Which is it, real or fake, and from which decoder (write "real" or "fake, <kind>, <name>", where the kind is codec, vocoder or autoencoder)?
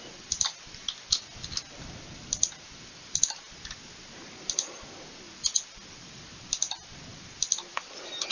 real